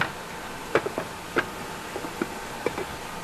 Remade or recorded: recorded